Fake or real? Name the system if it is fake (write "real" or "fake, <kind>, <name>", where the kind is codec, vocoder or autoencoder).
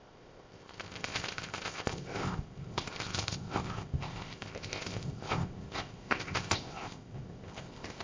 fake, codec, ZipCodec